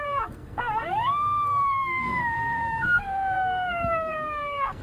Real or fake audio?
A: fake